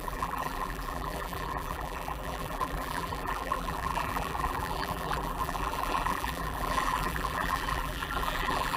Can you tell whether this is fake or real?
fake